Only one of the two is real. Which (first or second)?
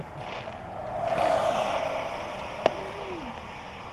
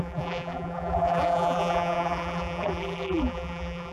first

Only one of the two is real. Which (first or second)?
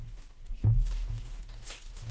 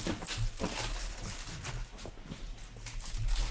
second